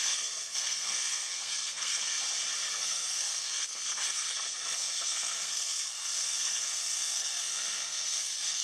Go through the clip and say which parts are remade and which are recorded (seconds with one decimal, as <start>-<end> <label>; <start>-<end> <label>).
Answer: 0.0-2.1 remade; 2.1-2.7 recorded; 2.7-8.6 remade